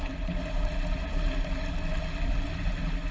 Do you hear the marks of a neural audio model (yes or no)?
no